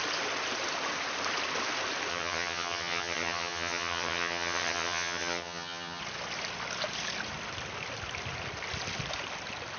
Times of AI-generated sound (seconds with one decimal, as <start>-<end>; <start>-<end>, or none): 2.1-6.0